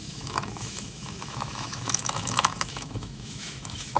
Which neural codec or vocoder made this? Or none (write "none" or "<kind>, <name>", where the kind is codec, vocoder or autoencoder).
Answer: autoencoder, DAC-VAE